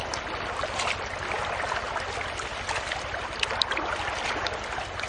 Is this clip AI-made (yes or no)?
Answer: no